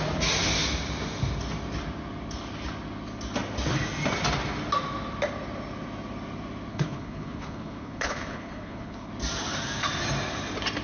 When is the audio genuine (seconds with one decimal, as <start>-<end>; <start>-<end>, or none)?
0.0-6.7; 9.1-10.8

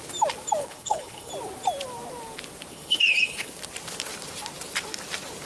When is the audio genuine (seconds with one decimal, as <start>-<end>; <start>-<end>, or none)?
0.0-0.6; 1.3-2.7; 3.5-5.5